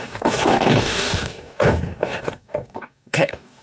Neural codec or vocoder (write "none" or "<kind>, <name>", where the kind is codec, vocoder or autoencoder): codec, DAC